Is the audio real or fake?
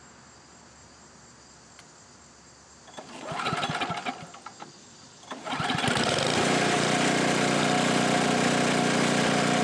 real